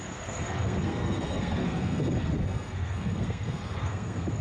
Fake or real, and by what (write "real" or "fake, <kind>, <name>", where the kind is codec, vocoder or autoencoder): fake, codec, SNAC